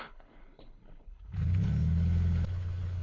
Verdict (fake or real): fake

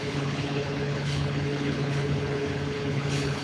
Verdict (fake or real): fake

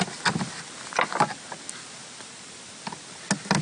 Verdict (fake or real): real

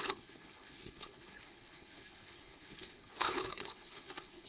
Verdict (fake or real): fake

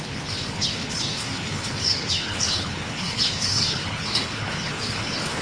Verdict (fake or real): fake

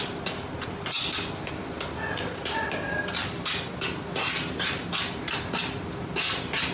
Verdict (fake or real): real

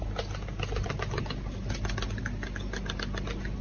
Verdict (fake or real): real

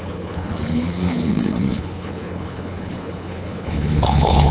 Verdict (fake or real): fake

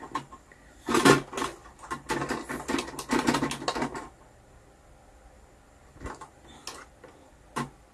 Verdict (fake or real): real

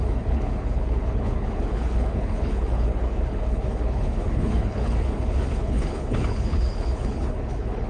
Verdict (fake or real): fake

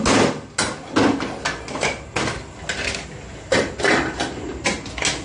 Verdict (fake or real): real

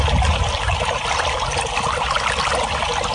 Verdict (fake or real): real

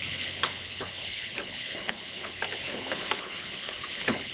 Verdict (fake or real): fake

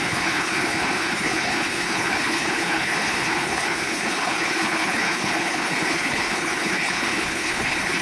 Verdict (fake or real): fake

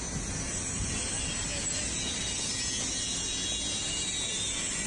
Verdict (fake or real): real